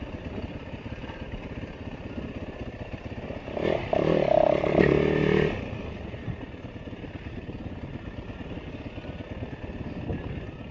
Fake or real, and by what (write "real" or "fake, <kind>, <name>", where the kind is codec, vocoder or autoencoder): real